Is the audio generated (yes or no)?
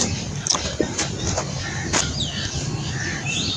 no